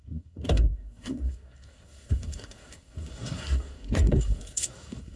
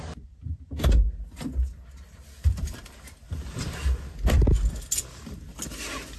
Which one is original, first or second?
second